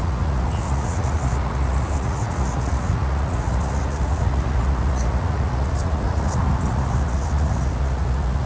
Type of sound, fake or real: fake